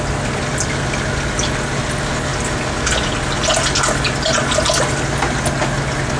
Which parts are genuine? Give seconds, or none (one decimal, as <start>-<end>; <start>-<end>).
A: 0.0-6.2